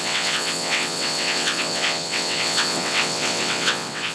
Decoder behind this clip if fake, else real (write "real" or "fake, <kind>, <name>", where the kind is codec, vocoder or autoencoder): fake, vocoder, WaveNeXt